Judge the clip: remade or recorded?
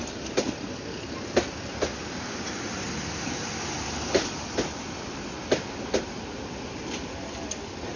recorded